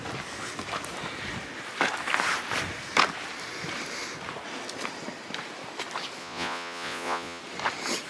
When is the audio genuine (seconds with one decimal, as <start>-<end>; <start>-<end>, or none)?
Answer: 0.0-6.2; 7.4-8.1